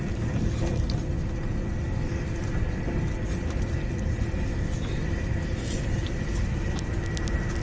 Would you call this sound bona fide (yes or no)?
yes